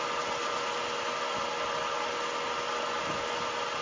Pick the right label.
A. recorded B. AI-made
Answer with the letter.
A